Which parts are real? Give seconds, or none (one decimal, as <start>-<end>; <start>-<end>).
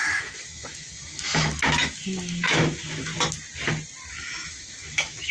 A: 3.1-4.1